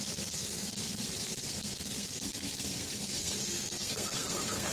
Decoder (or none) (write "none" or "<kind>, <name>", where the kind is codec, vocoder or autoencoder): codec, SNAC